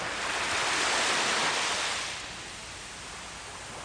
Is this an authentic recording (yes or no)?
yes